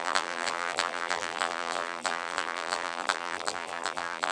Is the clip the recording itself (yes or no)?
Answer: no